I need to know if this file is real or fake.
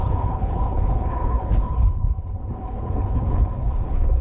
fake